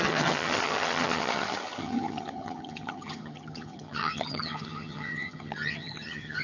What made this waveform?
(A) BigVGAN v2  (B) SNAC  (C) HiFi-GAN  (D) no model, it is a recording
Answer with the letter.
C